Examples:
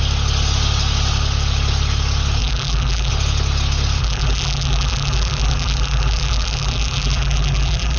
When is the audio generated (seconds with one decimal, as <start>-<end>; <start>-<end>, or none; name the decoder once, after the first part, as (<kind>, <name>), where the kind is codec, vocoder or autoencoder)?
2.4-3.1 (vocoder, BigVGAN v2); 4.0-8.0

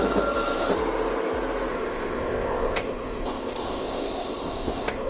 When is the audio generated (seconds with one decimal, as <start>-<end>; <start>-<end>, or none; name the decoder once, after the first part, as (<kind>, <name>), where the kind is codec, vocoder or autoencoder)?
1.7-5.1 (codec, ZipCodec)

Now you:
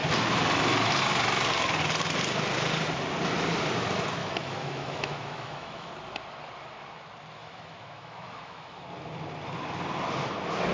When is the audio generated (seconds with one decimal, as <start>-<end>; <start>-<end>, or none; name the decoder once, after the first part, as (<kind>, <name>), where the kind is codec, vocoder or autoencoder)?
4.2-5.9 (autoencoder, DAC-VAE); 7.4-8.8

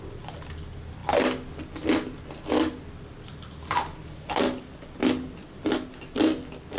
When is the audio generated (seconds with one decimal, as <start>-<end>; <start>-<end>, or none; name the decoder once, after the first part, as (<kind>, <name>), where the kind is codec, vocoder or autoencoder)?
none

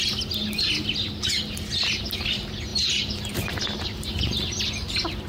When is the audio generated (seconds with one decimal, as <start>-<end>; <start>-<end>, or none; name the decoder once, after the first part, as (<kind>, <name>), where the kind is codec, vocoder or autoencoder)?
2.7-4.6 (vocoder, BigVGAN v2)

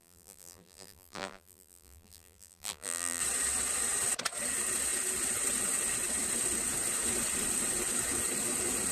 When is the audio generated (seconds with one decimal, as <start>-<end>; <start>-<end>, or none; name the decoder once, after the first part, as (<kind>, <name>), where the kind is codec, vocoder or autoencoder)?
0.0-3.2 (vocoder, BigVGAN v2)